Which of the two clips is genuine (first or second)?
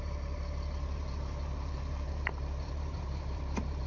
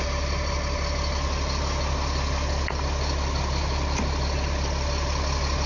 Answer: second